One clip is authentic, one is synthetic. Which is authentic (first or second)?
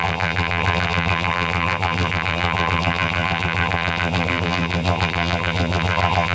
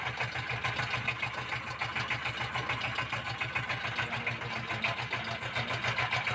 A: second